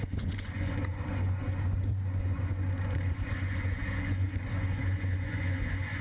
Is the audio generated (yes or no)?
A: yes